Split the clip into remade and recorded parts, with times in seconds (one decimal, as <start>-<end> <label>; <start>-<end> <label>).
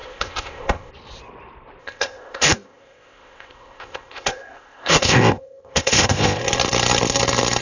0.0-0.9 remade; 0.9-1.8 recorded; 1.8-6.4 remade; 6.4-7.6 recorded